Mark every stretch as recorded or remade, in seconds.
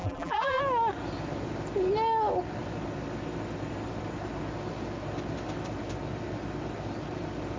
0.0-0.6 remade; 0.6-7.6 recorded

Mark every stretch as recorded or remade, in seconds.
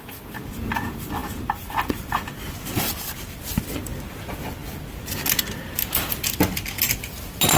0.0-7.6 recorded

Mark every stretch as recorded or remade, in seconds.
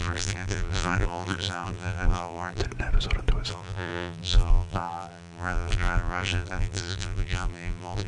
0.0-2.6 remade; 2.6-3.5 recorded; 3.5-8.1 remade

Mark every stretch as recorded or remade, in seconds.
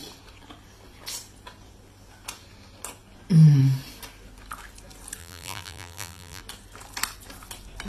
0.0-5.2 recorded; 5.2-6.4 remade; 6.4-7.9 recorded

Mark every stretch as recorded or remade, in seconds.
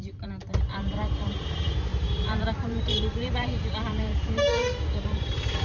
0.0-5.6 remade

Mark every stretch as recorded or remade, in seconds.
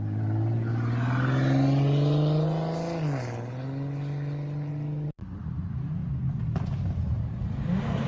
0.0-0.7 remade; 0.7-5.4 recorded; 5.4-6.0 remade; 6.0-8.1 recorded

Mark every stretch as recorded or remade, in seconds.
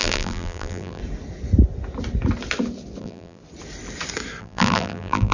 0.0-1.0 remade; 1.0-3.0 recorded; 3.0-3.4 remade; 3.4-4.4 recorded; 4.4-5.3 remade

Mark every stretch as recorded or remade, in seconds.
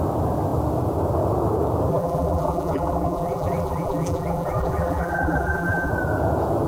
0.0-1.9 recorded; 1.9-5.9 remade; 5.9-6.7 recorded